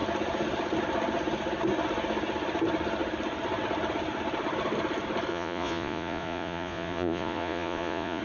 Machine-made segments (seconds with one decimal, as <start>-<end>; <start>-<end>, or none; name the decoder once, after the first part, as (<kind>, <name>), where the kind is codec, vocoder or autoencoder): 5.3-8.2 (vocoder, Vocos)